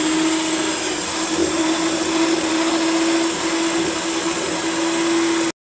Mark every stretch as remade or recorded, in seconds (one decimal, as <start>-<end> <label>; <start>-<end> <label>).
0.0-5.6 recorded